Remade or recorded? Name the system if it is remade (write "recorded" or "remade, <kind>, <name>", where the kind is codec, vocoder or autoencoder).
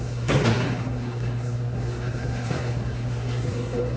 remade, codec, SNAC